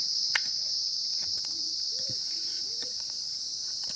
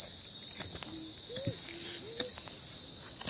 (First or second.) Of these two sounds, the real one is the second